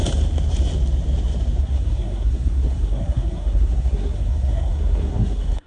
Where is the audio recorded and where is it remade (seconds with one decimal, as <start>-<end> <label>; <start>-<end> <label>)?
0.0-1.6 recorded; 1.6-5.7 remade